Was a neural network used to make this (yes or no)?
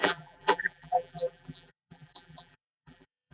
yes